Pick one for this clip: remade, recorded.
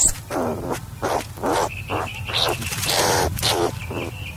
recorded